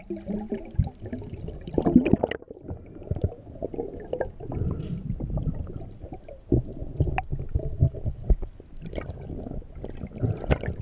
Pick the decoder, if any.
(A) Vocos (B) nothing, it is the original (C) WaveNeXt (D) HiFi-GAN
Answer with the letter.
B